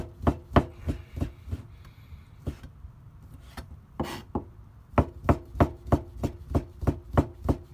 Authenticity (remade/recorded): recorded